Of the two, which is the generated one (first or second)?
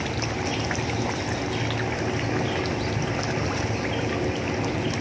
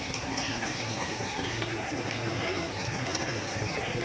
second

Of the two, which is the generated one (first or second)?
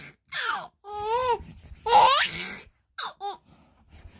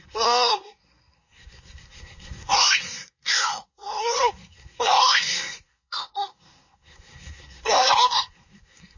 second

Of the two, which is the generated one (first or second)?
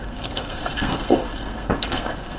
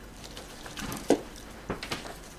first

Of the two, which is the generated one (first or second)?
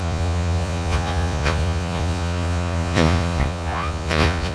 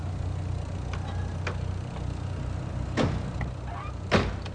first